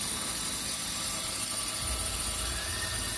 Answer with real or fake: fake